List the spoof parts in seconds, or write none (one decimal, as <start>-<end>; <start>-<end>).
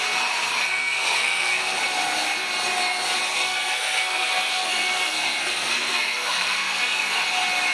0.6-1.8; 3.3-7.2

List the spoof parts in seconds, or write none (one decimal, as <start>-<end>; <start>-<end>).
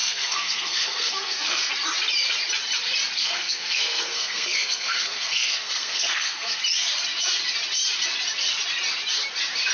0.0-1.7; 3.2-6.6